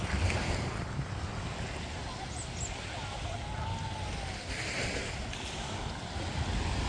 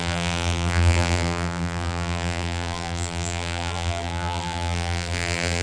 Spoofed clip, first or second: second